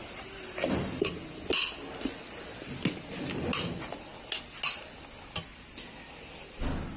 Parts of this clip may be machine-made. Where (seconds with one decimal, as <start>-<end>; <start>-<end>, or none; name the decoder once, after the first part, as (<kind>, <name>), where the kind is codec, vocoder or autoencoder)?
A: 0.0-1.1 (vocoder, BigVGAN v2)